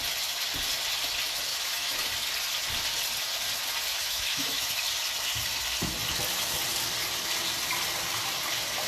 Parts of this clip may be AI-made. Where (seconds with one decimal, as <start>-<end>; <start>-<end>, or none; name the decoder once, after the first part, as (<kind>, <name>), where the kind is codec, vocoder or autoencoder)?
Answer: 1.5-2.1 (autoencoder, DAC-VAE); 3.9-4.8